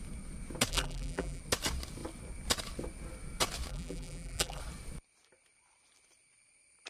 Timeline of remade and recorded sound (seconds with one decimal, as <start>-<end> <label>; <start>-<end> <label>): 0.0-0.7 recorded; 0.7-1.4 remade; 1.4-3.7 recorded; 3.7-4.6 remade; 4.6-6.9 recorded